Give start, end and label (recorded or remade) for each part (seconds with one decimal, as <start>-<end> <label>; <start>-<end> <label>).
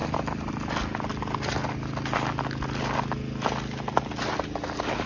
0.0-5.1 recorded